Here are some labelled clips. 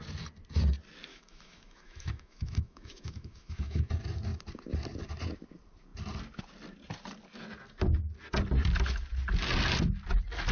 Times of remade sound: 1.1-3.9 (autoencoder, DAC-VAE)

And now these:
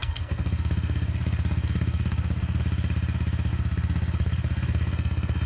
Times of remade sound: 0.0-2.6 (codec, SNAC); 3.5-5.5

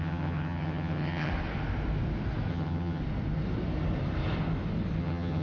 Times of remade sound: 0.0-1.3 (vocoder, HiFi-GAN); 2.5-3.0; 5.0-5.4

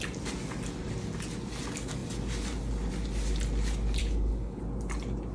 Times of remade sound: 4.0-4.6 (codec, HILCodec)

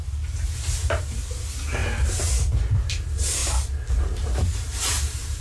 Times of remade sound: 0.0-1.8 (vocoder, BigVGAN v2); 2.5-3.4; 3.9-5.4

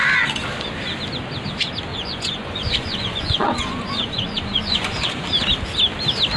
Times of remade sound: 1.9-5.2 (vocoder, Vocos)